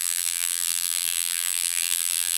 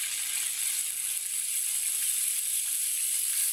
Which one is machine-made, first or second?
first